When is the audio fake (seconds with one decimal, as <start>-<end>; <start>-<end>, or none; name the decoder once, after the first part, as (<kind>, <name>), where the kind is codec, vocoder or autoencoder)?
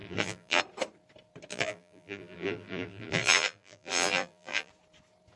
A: 0.0-0.6 (vocoder, BigVGAN v2); 1.5-4.7